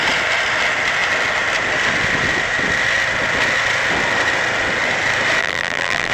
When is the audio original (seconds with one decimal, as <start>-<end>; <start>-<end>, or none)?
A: 0.0-5.4